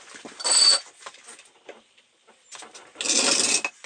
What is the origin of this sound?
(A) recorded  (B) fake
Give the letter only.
A